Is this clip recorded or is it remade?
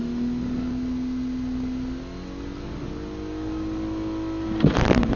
recorded